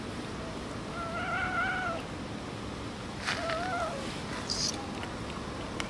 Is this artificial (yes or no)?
no